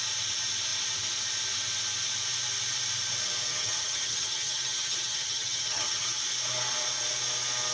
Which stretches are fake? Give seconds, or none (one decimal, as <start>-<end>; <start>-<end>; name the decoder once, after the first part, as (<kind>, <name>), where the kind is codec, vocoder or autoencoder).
3.5-6.2 (vocoder, HiFi-GAN)